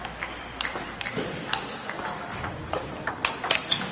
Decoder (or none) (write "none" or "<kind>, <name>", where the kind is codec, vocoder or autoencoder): vocoder, BigVGAN v2